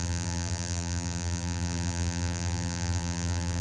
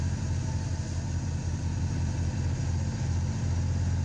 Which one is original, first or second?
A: second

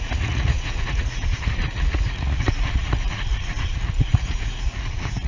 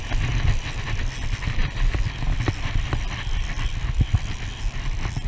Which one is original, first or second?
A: second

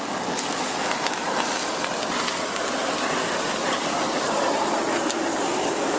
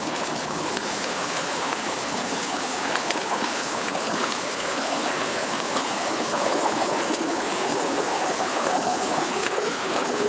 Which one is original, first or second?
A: first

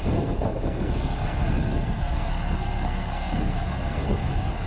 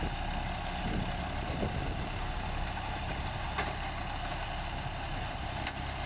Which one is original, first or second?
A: second